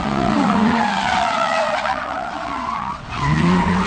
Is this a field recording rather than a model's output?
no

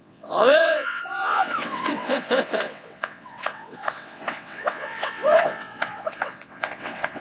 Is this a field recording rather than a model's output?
no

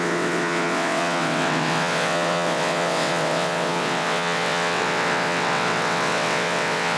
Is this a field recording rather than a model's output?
no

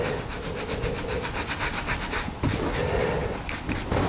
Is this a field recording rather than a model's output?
yes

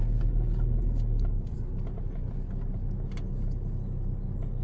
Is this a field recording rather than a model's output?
yes